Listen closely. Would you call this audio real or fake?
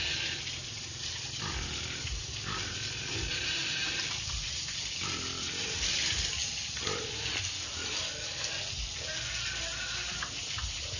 real